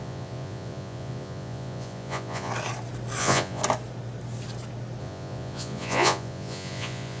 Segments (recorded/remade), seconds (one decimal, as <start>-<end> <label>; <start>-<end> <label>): 0.0-2.5 remade; 2.5-3.2 recorded; 3.2-3.6 remade; 3.6-5.0 recorded; 5.0-7.2 remade